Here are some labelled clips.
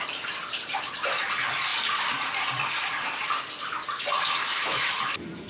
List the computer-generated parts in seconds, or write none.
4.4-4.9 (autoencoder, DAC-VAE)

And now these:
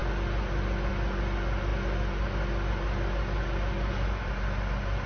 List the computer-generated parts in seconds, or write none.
none

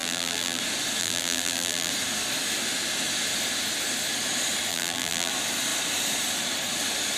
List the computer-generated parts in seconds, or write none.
0.0-0.6 (vocoder, BigVGAN v2); 1.0-1.9; 4.7-5.3

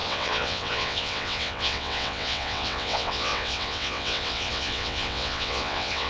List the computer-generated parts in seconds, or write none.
0.0-6.1 (vocoder, WaveNeXt)

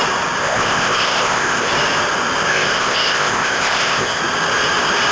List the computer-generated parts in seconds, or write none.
0.4-1.7 (codec, ZipCodec); 2.5-4.2

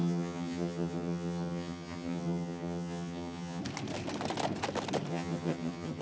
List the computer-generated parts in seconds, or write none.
0.0-3.6 (vocoder, HiFi-GAN); 5.1-6.0

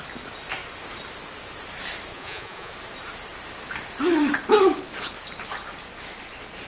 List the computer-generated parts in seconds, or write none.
2.1-2.7 (vocoder, Vocos)

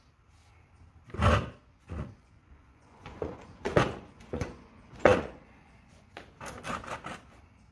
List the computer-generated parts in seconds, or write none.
1.6-6.2 (vocoder, Vocos)